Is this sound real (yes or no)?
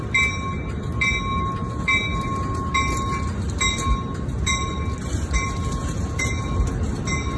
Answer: yes